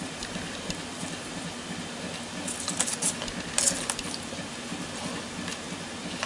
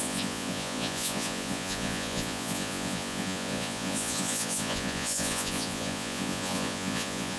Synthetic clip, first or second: second